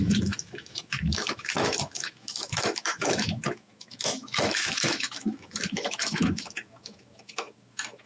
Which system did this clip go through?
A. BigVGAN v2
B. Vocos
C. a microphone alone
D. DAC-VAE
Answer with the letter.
D